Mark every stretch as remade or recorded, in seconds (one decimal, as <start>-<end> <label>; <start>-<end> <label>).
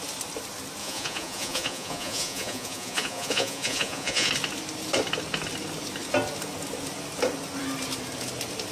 0.0-0.8 recorded; 0.8-4.3 remade; 4.3-8.7 recorded